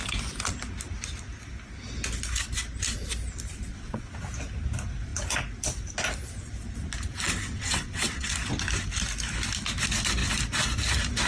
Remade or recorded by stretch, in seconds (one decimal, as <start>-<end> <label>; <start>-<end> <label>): 0.0-3.5 recorded; 3.5-4.1 remade; 4.1-7.5 recorded; 7.5-8.3 remade; 8.3-11.3 recorded